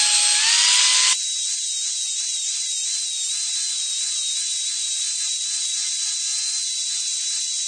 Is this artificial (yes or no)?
no